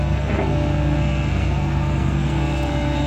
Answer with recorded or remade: remade